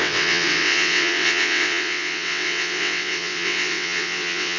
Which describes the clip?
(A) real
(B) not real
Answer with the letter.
B